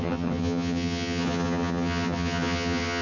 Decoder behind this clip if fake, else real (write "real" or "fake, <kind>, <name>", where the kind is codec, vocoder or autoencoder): fake, vocoder, HiFi-GAN